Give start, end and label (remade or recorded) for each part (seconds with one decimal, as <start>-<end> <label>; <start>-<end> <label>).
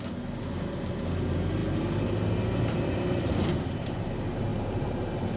0.0-5.4 recorded